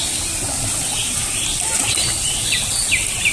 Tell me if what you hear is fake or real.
real